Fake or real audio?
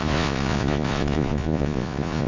fake